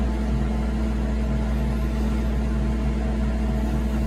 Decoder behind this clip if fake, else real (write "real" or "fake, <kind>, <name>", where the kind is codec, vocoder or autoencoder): real